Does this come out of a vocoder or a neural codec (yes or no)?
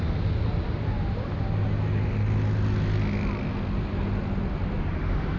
no